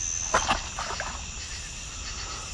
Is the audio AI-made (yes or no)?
no